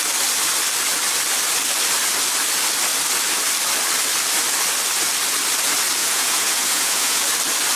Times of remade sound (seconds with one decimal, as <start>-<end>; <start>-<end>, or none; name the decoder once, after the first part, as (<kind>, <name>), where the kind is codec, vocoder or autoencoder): 6.0-7.2 (vocoder, Vocos)